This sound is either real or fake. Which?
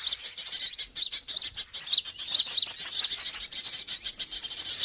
real